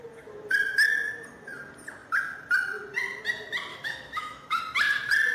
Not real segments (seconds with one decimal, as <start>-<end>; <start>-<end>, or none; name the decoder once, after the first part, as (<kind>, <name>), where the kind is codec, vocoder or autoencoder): 3.7-4.6 (autoencoder, DAC-VAE)